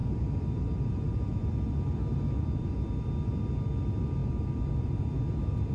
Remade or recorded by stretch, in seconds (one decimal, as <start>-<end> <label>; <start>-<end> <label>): 0.0-3.4 remade; 3.4-4.2 recorded; 4.2-4.9 remade; 4.9-5.7 recorded